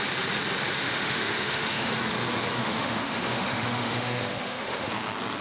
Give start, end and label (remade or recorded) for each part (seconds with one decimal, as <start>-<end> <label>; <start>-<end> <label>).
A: 0.0-0.8 recorded; 0.8-1.9 remade; 1.9-2.5 recorded; 2.5-4.9 remade; 4.9-5.4 recorded